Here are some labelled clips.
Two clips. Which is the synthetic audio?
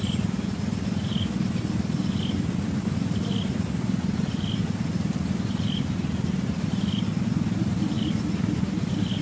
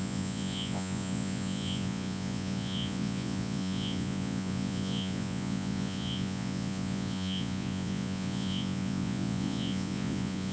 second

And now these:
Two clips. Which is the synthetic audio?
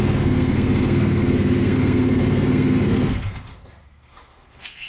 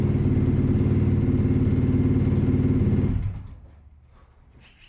first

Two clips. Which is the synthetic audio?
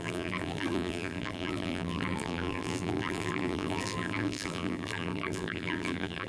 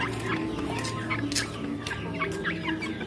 first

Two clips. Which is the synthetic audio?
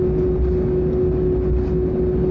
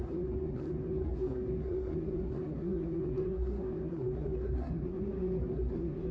second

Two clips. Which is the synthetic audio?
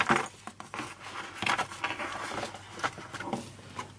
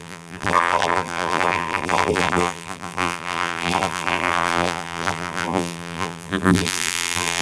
second